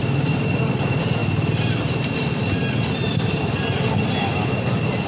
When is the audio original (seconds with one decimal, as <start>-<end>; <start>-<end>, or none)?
0.0-5.1